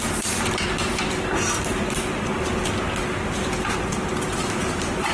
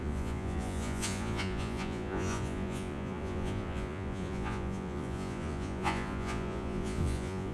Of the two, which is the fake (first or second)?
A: second